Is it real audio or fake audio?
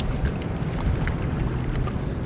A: real